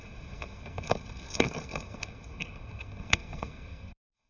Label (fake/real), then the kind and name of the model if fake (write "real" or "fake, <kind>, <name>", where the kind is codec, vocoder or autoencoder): fake, codec, SNAC